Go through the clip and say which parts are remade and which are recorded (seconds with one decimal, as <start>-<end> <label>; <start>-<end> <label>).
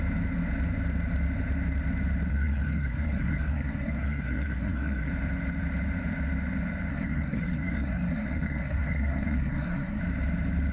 0.0-2.3 recorded; 2.3-5.1 remade; 5.1-6.9 recorded; 6.9-10.0 remade; 10.0-10.7 recorded